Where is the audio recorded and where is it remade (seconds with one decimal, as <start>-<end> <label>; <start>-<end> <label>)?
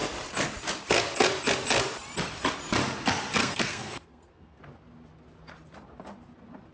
0.0-3.4 recorded; 3.4-4.6 remade; 4.6-6.7 recorded